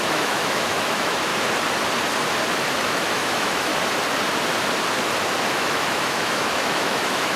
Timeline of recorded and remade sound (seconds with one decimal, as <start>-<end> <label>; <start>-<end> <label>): 0.0-1.3 remade; 1.3-2.7 recorded; 2.7-3.7 remade; 3.7-5.5 recorded; 5.5-7.4 remade